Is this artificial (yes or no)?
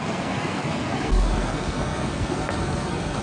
yes